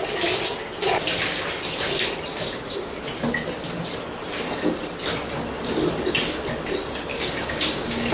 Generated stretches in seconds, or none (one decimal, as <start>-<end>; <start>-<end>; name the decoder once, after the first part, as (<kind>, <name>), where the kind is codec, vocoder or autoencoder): 2.3-3.0 (codec, DAC); 7.1-8.1